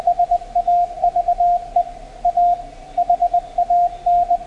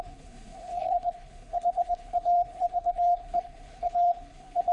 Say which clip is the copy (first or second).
second